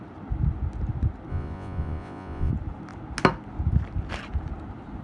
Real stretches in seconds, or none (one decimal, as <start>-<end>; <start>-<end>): 0.0-1.3; 2.5-5.0